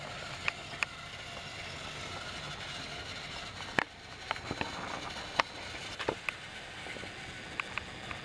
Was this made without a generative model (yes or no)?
yes